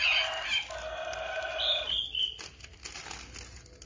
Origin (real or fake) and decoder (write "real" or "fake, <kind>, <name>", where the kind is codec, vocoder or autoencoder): real